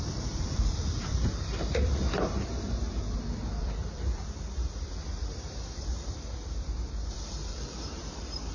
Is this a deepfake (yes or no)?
yes